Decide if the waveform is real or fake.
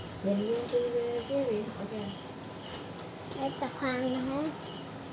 real